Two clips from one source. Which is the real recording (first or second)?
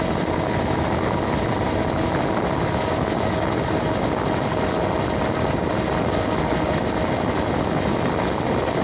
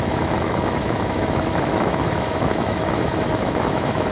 first